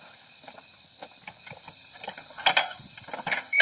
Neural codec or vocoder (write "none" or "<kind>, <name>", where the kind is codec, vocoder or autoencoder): none